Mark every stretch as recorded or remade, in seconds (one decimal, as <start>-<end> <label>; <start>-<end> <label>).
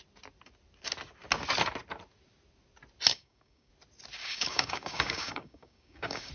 0.0-3.1 recorded; 3.1-3.7 remade; 3.7-4.2 recorded; 4.2-6.3 remade